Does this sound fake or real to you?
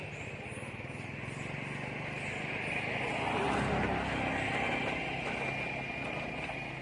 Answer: real